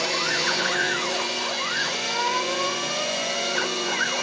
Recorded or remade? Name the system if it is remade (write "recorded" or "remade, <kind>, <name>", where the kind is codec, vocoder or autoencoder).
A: remade, vocoder, Vocos